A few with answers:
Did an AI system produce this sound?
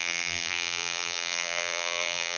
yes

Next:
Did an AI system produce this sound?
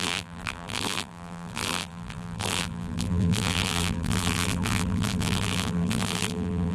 yes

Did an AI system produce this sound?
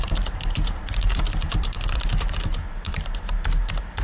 yes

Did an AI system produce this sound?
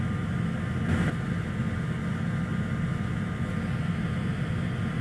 no